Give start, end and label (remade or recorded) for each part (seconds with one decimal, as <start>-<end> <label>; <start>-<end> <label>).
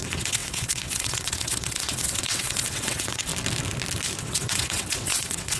0.0-3.3 remade; 3.3-4.2 recorded; 4.2-5.6 remade